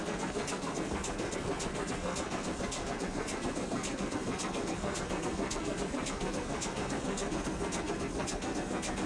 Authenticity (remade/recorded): remade